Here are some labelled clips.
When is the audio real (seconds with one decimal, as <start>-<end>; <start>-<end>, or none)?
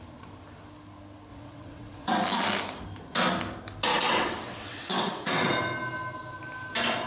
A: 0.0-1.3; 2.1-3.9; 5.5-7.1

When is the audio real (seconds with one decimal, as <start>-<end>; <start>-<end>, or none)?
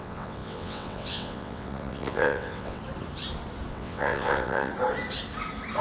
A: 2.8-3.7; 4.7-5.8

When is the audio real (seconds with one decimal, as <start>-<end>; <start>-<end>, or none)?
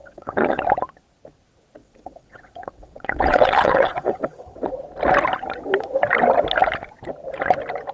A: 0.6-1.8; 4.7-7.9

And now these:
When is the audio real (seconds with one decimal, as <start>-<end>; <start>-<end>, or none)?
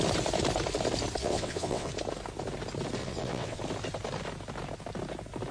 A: 0.0-1.2; 1.9-3.0; 3.6-5.5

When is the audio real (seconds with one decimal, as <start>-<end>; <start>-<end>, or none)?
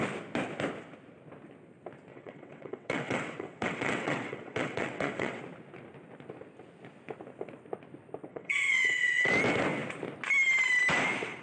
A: 0.0-2.1; 5.4-8.3; 9.3-11.4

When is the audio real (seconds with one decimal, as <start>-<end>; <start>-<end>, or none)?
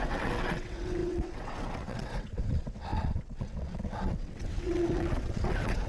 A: none